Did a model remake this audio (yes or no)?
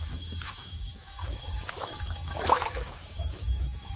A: yes